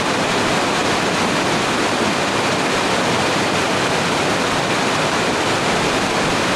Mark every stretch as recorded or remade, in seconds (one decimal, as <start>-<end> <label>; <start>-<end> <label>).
0.0-6.6 recorded